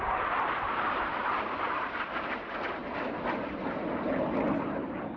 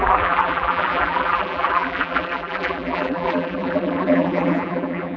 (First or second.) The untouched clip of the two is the first